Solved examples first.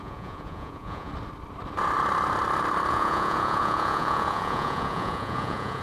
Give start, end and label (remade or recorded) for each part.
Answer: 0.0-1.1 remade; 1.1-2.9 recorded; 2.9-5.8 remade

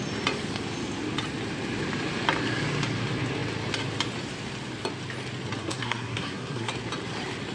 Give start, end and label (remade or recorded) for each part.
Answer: 0.0-5.6 recorded; 5.6-6.7 remade; 6.7-7.5 recorded

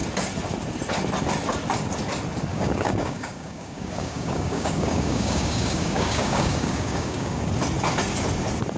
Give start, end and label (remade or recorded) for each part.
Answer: 0.0-2.5 recorded; 2.5-7.4 remade; 7.4-8.8 recorded